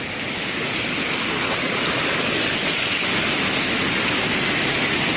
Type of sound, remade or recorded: recorded